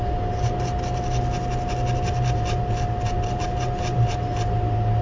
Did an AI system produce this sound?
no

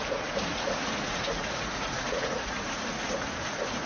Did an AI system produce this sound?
yes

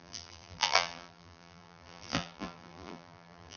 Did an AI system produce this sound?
yes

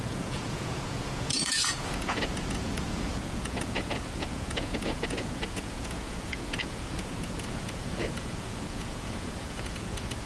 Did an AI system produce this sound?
yes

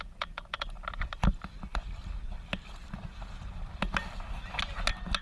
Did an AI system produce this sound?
no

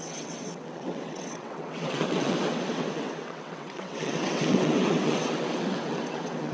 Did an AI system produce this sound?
yes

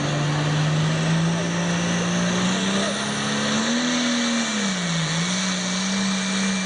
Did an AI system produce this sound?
no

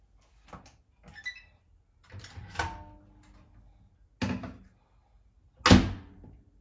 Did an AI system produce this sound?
no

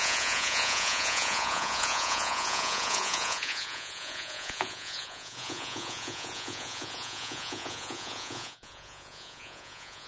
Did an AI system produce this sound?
yes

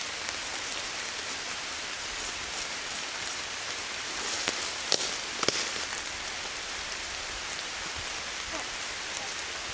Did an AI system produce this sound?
yes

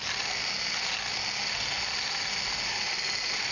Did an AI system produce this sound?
no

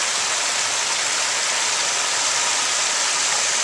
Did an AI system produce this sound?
no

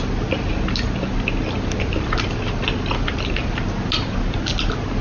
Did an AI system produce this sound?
no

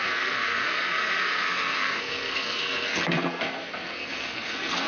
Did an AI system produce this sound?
yes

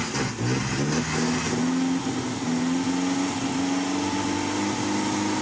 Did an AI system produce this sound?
no